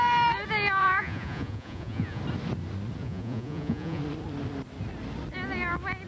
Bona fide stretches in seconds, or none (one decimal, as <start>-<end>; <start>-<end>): 0.0-0.8; 2.2-3.0; 4.0-6.1